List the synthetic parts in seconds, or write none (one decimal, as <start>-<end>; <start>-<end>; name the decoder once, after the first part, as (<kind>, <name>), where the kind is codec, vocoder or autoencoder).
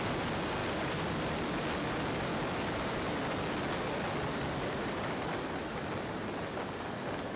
0.6-1.1 (vocoder, BigVGAN v2)